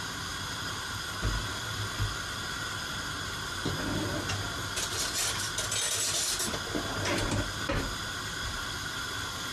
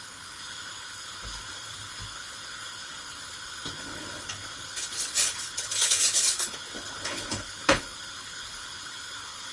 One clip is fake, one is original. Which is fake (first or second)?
second